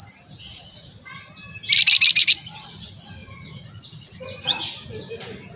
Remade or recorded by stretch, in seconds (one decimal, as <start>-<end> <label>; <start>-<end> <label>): 0.0-0.5 recorded; 0.5-1.1 remade; 1.1-2.2 recorded; 2.2-2.8 remade; 2.8-3.2 recorded; 3.2-4.6 remade; 4.6-5.6 recorded